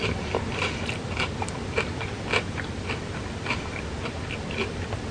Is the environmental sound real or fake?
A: real